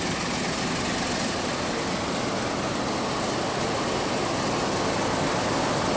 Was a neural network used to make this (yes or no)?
no